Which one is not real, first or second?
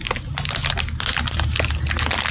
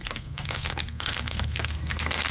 second